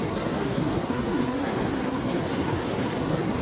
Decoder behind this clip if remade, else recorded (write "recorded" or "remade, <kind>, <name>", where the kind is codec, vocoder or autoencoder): remade, codec, SNAC